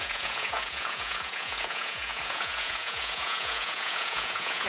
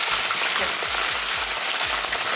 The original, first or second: second